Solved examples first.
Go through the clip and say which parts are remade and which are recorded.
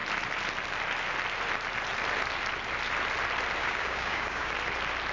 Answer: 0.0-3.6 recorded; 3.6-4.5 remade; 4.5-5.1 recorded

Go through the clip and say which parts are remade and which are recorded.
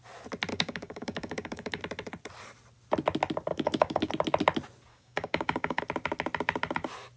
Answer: 0.0-0.5 recorded; 0.5-1.8 remade; 1.8-3.5 recorded; 3.5-4.1 remade; 4.1-4.9 recorded; 4.9-5.8 remade; 5.8-7.2 recorded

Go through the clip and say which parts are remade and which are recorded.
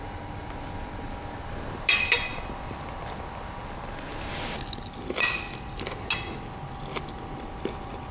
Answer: 0.0-8.1 recorded